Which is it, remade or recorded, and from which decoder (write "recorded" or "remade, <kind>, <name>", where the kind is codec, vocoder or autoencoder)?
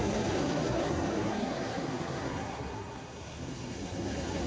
remade, codec, SNAC